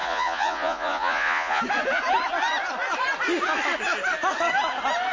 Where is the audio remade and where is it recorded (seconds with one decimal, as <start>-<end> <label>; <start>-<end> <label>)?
0.0-1.6 remade; 1.6-5.1 recorded